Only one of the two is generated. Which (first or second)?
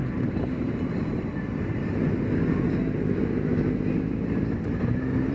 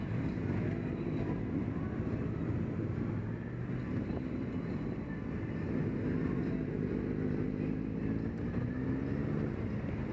first